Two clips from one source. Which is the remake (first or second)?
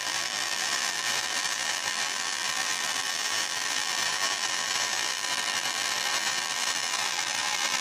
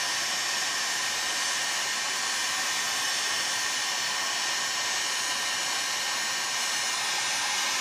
first